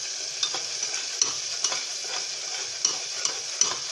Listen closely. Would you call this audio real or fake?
real